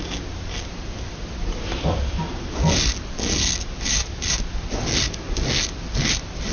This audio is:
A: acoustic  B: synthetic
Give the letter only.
A